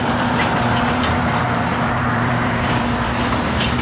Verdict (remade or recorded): remade